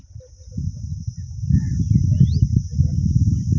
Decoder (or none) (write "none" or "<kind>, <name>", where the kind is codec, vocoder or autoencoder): none